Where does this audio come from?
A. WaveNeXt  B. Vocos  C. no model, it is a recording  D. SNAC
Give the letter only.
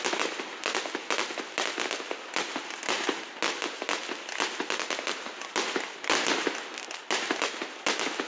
C